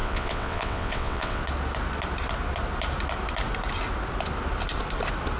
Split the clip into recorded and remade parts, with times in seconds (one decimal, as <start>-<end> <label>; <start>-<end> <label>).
0.0-1.4 remade; 1.4-5.4 recorded